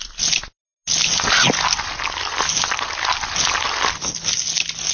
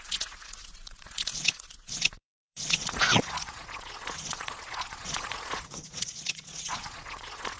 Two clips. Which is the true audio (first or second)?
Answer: first